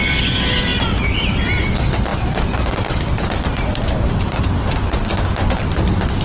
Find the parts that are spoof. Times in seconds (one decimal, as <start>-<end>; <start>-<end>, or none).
none